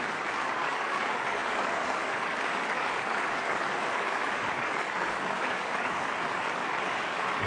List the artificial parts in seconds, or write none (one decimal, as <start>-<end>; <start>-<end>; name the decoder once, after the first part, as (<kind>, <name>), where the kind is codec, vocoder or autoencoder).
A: 0.0-7.5 (codec, DAC)